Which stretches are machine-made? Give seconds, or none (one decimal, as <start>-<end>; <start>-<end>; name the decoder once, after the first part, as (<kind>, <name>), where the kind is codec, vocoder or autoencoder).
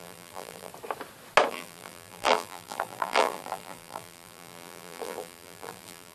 0.0-0.7 (vocoder, BigVGAN v2); 1.5-6.1